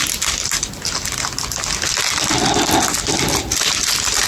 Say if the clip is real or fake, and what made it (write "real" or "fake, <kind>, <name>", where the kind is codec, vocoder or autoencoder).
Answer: real